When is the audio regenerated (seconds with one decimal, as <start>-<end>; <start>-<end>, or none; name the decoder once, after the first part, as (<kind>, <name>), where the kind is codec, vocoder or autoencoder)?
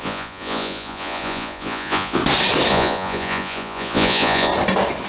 0.0-2.2 (vocoder, Vocos); 2.7-4.5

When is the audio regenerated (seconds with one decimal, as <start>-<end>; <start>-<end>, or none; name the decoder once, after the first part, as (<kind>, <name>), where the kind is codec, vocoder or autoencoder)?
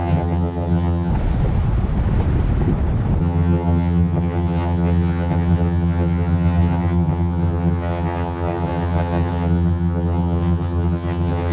0.0-1.1 (vocoder, HiFi-GAN); 3.2-11.5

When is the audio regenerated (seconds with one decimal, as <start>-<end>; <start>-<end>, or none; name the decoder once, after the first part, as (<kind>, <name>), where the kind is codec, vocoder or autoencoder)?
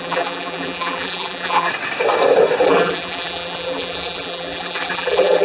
0.0-1.7 (vocoder, BigVGAN v2); 2.6-5.4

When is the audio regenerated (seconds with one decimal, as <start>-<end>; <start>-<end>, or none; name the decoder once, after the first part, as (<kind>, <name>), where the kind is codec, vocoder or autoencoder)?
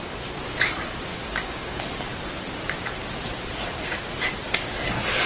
1.1-1.9 (codec, DAC)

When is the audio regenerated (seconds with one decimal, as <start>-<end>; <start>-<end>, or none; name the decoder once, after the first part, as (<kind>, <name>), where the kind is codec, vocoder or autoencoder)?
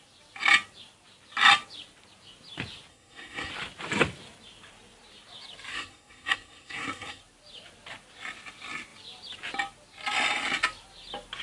2.9-3.5 (codec, SNAC); 5.7-7.2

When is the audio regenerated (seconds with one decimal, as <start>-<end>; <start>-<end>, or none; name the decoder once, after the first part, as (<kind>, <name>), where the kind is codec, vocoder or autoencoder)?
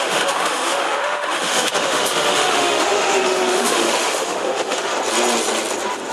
0.0-4.9 (autoencoder, DAC-VAE)